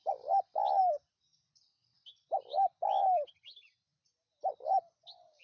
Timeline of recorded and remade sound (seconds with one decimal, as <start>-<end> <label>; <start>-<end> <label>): 0.0-0.8 remade; 0.8-1.3 recorded; 1.3-2.9 remade; 2.9-5.4 recorded